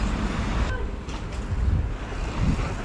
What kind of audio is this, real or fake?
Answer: real